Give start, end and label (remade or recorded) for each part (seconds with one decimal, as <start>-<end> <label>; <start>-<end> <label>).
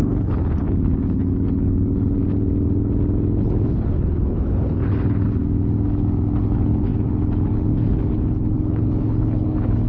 0.0-2.2 remade; 2.2-3.4 recorded; 3.4-5.4 remade; 5.4-6.4 recorded; 6.4-9.9 remade